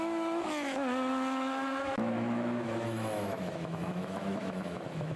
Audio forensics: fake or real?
fake